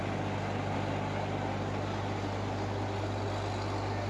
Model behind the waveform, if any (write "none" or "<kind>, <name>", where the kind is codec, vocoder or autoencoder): none